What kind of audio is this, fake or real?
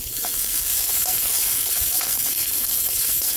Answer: fake